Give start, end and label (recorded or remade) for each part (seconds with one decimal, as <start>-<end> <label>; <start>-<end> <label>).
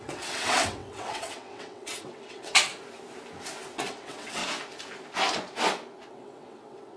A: 0.0-2.7 remade; 2.7-3.9 recorded; 3.9-4.4 remade; 4.4-6.1 recorded; 6.1-7.0 remade